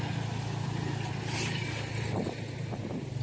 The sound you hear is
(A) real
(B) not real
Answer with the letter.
A